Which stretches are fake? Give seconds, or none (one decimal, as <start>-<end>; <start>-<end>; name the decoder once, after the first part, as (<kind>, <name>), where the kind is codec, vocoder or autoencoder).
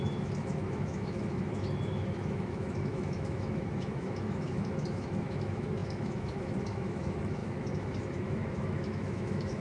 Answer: 0.0-9.6 (autoencoder, DAC-VAE)